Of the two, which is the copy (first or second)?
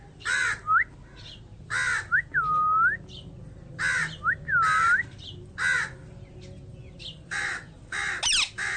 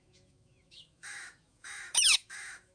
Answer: second